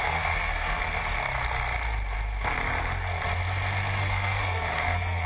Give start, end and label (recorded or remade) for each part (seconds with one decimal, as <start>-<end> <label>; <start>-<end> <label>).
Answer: 0.0-1.0 remade; 1.0-4.0 recorded; 4.0-5.3 remade